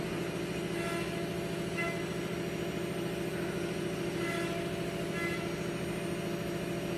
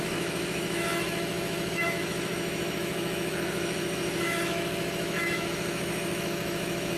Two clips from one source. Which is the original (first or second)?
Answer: first